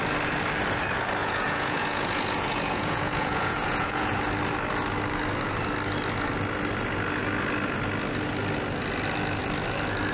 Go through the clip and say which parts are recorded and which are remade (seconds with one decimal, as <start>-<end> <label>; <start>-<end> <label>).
0.0-1.2 recorded; 1.2-4.2 remade; 4.2-10.1 recorded